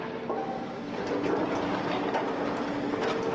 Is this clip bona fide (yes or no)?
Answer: yes